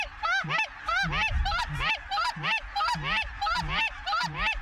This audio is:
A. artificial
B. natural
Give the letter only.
B